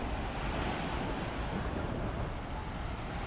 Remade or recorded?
recorded